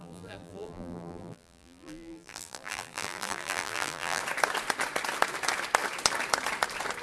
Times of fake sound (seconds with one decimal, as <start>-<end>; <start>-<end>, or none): 0.0-4.2